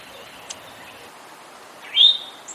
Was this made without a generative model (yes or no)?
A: yes